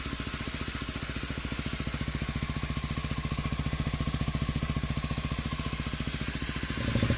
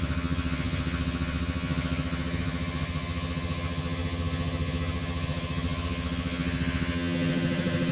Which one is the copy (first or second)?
second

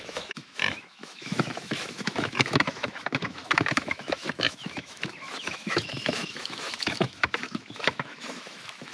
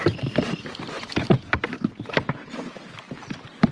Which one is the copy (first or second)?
first